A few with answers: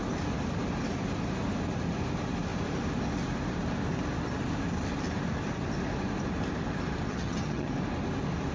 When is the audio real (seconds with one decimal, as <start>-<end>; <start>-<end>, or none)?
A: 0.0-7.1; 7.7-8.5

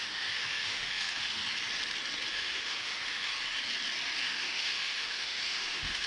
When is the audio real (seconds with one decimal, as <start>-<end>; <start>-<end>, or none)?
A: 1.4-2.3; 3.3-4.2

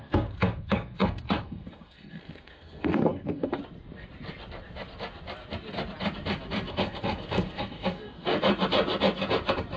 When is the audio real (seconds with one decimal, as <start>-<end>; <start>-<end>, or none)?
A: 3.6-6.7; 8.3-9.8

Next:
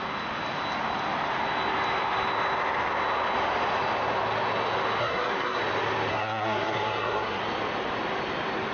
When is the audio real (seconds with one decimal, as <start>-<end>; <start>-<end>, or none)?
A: 0.0-5.0; 5.6-6.1; 7.4-8.7